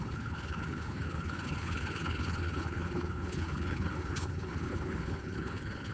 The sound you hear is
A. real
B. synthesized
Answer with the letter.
B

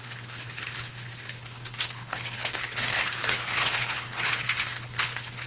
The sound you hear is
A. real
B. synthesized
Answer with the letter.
B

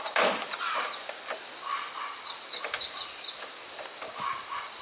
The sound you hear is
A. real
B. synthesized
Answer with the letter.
A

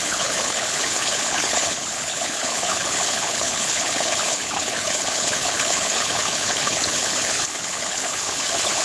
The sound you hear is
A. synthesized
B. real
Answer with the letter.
A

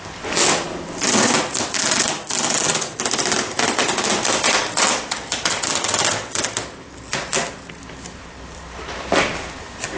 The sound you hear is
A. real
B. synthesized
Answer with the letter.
A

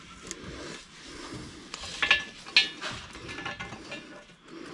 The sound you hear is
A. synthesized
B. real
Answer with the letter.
B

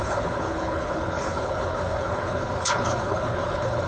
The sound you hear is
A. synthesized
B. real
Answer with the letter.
A